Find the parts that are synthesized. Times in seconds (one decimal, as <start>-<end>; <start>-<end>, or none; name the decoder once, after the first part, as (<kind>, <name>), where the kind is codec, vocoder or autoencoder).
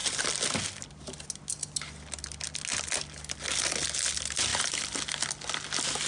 none